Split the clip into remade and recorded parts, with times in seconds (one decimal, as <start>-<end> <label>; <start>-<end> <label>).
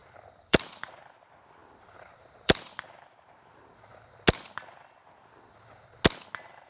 0.0-0.9 remade; 0.9-1.6 recorded; 1.6-4.1 remade; 4.1-6.7 recorded